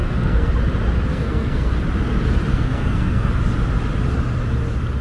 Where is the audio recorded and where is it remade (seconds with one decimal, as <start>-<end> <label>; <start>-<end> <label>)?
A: 0.0-0.5 remade; 0.5-1.1 recorded; 1.1-1.7 remade; 1.7-2.5 recorded; 2.5-3.3 remade; 3.3-5.0 recorded